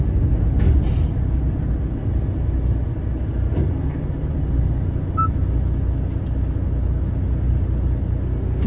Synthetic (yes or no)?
no